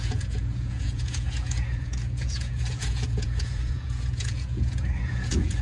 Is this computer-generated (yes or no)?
yes